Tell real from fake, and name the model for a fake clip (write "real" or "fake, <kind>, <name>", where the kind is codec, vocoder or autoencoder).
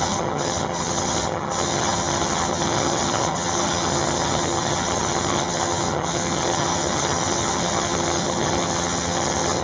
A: fake, vocoder, HiFi-GAN